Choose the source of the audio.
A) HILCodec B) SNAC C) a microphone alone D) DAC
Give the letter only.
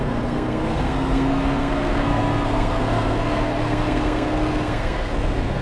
B